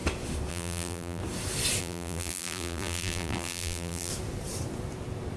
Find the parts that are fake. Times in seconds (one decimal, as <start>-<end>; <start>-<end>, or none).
0.5-1.2; 1.8-4.1